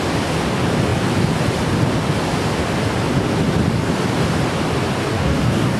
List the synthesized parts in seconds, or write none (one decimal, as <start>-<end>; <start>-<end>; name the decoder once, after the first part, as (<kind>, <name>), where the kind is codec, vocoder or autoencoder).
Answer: 5.0-5.8 (codec, DAC)

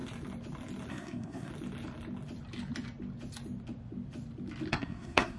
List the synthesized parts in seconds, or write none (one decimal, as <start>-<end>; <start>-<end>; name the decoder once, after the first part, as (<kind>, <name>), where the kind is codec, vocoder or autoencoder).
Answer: 0.9-1.5 (codec, SNAC); 4.7-5.4

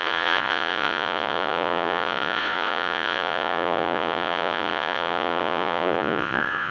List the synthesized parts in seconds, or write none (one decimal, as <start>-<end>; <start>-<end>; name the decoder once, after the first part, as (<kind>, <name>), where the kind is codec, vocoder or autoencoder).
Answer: 0.0-6.7 (vocoder, Vocos)

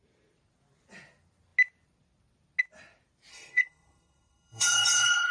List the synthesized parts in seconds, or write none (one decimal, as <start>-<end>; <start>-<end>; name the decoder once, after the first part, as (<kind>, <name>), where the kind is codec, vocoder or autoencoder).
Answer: 3.3-5.3 (codec, HILCodec)

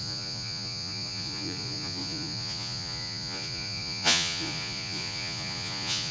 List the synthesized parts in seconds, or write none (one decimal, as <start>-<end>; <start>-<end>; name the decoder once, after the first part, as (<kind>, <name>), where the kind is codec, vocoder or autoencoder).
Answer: 0.0-6.1 (vocoder, Vocos)

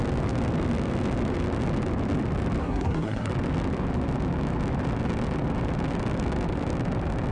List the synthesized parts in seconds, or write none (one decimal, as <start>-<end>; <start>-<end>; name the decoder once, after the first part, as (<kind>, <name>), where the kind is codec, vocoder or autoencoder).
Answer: 2.6-3.3 (codec, SNAC)

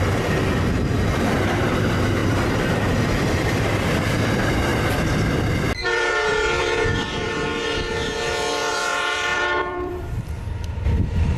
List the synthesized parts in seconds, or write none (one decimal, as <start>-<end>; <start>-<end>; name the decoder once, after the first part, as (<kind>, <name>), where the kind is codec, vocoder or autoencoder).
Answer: 0.0-7.5 (vocoder, BigVGAN v2); 8.7-11.4